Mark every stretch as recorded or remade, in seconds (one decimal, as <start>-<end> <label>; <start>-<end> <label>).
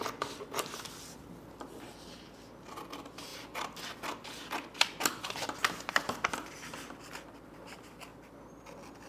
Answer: 0.0-9.1 recorded